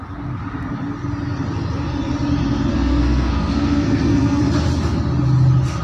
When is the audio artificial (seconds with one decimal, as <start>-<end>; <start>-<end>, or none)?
2.7-4.4